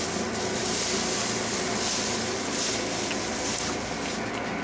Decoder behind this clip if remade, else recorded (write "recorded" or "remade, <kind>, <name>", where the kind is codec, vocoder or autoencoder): recorded